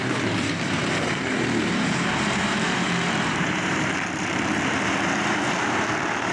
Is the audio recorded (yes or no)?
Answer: no